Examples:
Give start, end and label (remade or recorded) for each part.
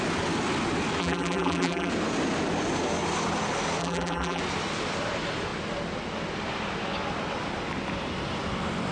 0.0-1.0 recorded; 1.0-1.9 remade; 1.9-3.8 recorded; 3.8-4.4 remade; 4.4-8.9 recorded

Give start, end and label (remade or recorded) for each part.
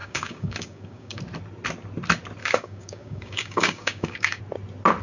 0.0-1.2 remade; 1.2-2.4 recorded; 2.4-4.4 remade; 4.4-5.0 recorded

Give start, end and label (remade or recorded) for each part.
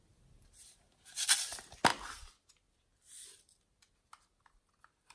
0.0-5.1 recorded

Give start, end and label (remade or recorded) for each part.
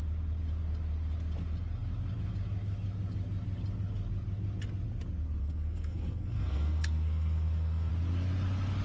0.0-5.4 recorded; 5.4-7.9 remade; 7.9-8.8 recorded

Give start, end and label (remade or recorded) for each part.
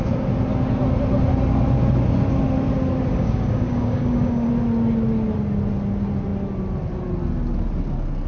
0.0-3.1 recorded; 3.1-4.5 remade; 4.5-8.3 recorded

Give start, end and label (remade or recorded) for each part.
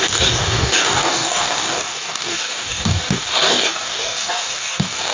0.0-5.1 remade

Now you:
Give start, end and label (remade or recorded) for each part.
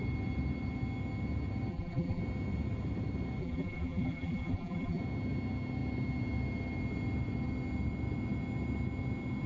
0.0-1.7 recorded; 1.7-2.2 remade; 2.2-3.4 recorded; 3.4-5.0 remade; 5.0-9.5 recorded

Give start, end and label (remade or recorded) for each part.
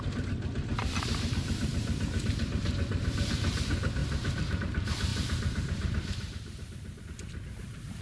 0.0-0.8 recorded; 0.8-2.2 remade; 2.2-4.0 recorded; 4.0-4.6 remade; 4.6-5.1 recorded; 5.1-7.0 remade; 7.0-8.0 recorded